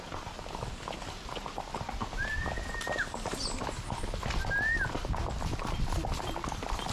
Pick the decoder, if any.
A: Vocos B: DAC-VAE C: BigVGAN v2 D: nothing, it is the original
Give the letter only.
D